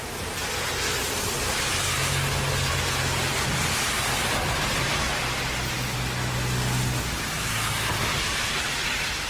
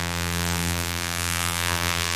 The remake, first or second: second